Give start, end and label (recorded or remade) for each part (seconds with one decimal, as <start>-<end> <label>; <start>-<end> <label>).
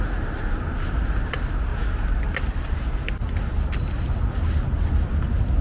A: 0.0-5.6 recorded